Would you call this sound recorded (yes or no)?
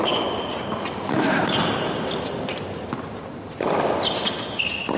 yes